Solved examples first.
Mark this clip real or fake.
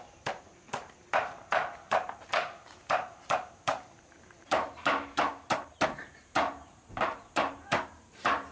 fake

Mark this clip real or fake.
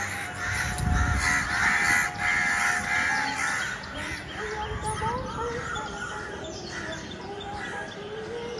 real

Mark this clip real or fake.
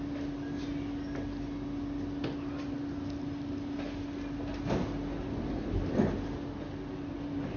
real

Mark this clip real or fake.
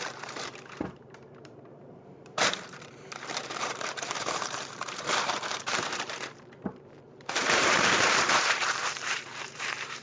fake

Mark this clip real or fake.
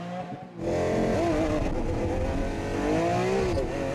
real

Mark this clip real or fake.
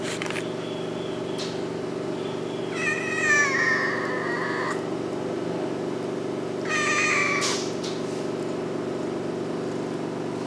real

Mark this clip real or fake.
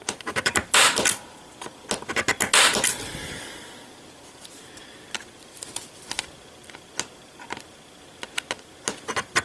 real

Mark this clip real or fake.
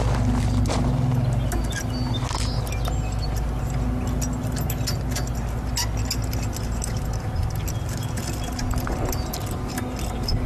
real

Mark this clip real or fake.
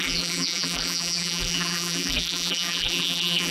fake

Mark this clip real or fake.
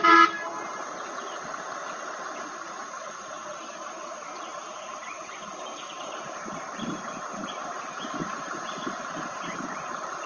fake